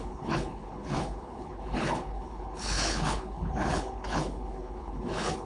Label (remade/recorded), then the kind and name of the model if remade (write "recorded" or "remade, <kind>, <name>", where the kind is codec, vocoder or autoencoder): remade, codec, HILCodec